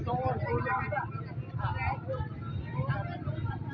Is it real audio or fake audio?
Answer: real